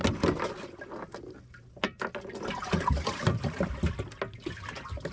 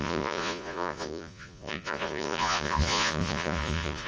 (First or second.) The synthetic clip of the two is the second